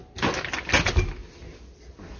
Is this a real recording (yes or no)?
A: yes